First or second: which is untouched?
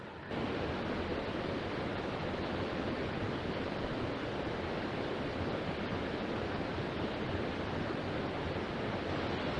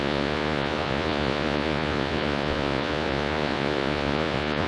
first